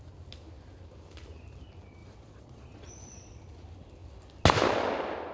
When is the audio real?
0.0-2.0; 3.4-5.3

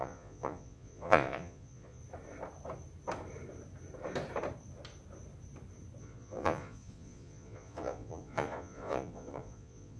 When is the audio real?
2.0-6.0

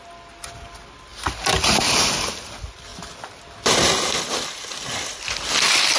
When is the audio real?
0.0-6.0

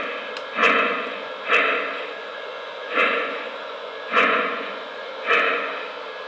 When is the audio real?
0.0-0.6; 1.3-2.1; 5.7-6.3

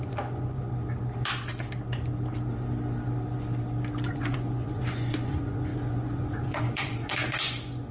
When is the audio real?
0.7-4.1